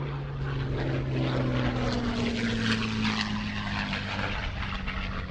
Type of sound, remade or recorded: recorded